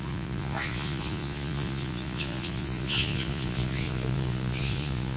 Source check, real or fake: fake